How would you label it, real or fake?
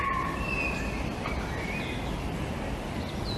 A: real